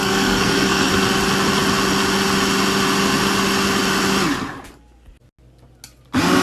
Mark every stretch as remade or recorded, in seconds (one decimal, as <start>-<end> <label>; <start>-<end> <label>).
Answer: 0.0-0.9 remade; 0.9-6.4 recorded